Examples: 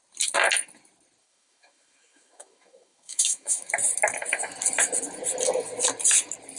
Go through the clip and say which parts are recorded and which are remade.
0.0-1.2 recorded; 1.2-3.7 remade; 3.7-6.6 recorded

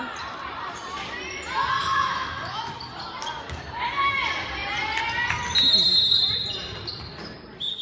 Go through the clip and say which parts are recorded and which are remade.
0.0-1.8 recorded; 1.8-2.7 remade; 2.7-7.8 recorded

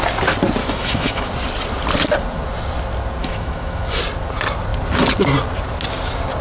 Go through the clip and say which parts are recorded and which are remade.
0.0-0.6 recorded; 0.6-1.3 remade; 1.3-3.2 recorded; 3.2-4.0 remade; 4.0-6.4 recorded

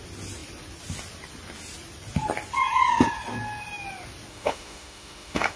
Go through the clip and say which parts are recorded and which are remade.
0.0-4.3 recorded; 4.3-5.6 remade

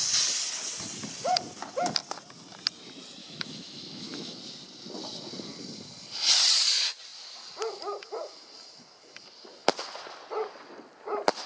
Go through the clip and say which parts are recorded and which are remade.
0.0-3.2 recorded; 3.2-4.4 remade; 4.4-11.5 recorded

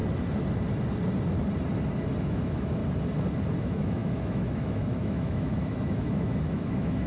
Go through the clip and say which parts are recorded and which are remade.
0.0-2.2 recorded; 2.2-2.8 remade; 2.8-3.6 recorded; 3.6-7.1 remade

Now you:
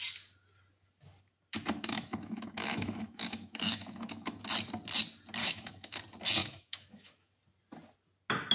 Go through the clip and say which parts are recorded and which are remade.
0.0-1.5 recorded; 1.5-4.4 remade; 4.4-5.4 recorded; 5.4-6.0 remade; 6.0-6.4 recorded; 6.4-7.3 remade; 7.3-8.5 recorded